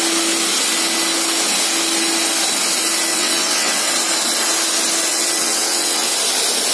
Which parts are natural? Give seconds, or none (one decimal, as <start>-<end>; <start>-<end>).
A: 0.0-3.1; 3.9-5.1; 6.1-6.7